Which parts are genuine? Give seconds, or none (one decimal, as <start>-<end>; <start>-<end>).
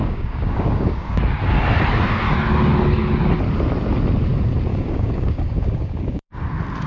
1.2-4.7; 6.5-6.9